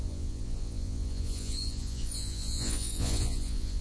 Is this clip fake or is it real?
fake